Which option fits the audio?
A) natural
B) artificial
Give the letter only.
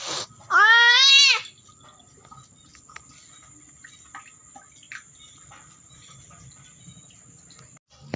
A